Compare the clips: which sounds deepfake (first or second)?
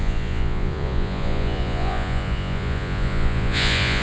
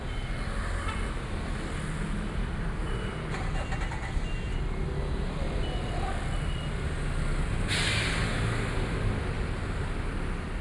first